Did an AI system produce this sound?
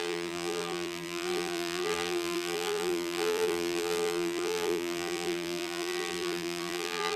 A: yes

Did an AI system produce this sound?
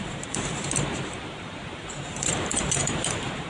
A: yes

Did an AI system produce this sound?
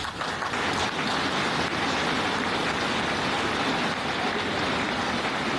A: no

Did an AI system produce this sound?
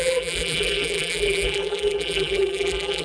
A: yes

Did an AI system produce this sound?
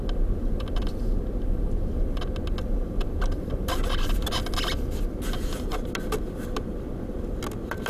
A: no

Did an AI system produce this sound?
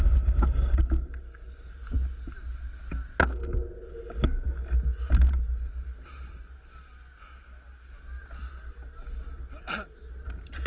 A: no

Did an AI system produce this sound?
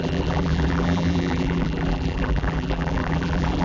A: yes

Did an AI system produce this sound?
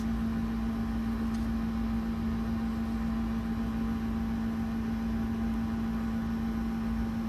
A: no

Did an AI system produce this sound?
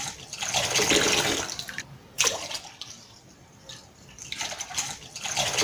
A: yes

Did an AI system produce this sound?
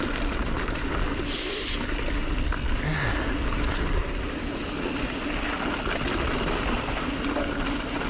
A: no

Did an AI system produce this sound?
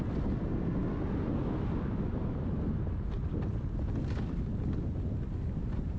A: no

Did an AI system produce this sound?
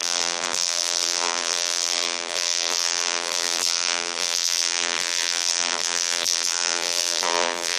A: yes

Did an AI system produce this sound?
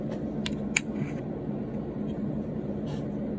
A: no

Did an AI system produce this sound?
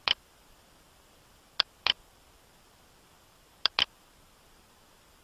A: yes